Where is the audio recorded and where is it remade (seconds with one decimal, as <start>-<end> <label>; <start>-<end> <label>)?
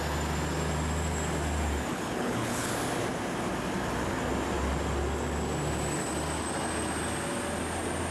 0.0-1.9 recorded; 1.9-2.7 remade; 2.7-8.1 recorded